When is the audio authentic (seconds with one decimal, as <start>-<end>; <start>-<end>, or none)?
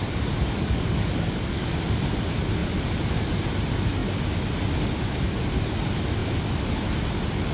1.7-7.5